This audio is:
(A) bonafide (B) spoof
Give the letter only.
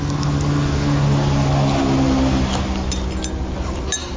A